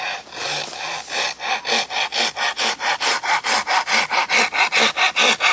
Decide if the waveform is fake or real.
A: real